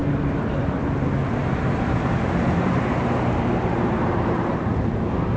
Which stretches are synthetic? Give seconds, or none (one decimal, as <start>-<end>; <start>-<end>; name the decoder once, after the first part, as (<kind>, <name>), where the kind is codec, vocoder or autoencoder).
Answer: 1.4-4.6 (vocoder, BigVGAN v2)